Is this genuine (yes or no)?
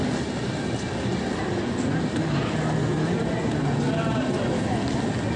yes